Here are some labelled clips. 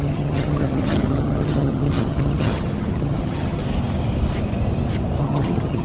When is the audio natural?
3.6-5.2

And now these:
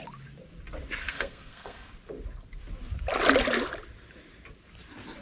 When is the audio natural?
0.0-1.0; 1.9-5.2

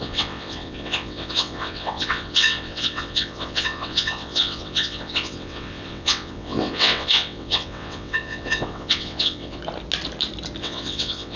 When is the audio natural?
9.6-10.6

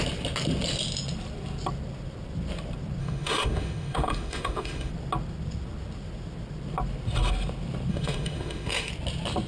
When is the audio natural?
0.0-3.0; 4.9-7.9; 8.9-9.5

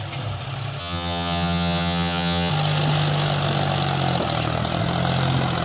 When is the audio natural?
0.0-0.8; 2.5-5.6

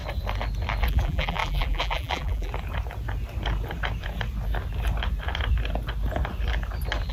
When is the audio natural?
0.0-0.9; 2.5-7.1

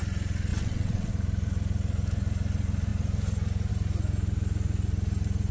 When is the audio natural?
0.0-0.5; 1.1-5.5

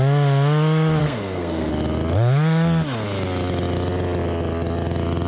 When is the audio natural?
0.0-1.0; 1.7-5.3